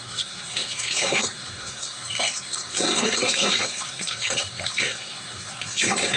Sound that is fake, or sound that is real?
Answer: fake